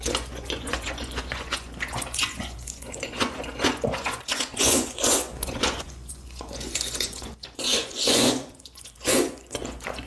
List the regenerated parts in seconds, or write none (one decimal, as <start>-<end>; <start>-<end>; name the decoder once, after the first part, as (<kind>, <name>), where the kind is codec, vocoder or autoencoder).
0.0-10.1 (vocoder, Vocos)